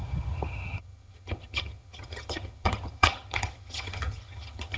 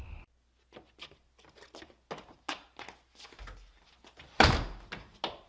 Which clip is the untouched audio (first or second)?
second